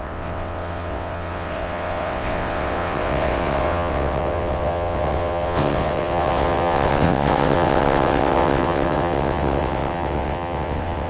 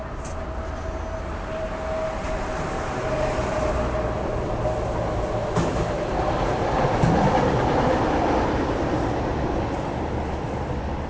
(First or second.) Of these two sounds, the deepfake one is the first